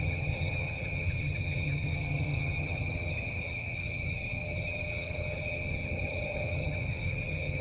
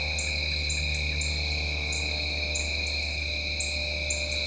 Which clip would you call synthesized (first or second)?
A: first